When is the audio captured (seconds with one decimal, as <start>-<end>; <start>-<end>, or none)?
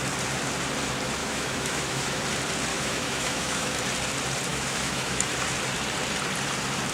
0.0-1.2; 2.2-2.7; 3.8-4.5; 5.3-6.9